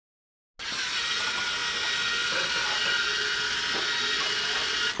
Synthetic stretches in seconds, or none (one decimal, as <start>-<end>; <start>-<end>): none

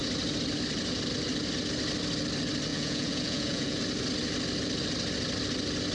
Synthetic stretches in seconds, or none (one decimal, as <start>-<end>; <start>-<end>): 2.7-3.8

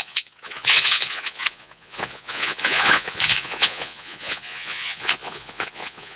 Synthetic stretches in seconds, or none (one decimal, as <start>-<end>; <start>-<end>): 0.0-6.2

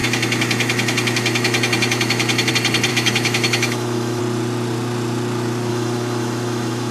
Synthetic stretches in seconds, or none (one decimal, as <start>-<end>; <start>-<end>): 0.0-2.5; 2.9-4.2; 5.7-6.9

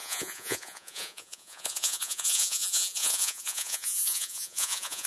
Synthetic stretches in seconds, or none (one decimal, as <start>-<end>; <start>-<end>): 0.0-5.1

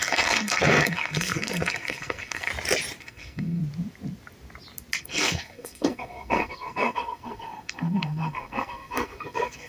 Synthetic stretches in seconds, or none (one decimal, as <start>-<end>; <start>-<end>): 0.0-2.5; 3.0-3.6; 5.0-9.7

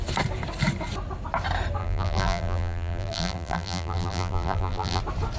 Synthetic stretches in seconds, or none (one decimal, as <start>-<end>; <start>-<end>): 1.8-5.0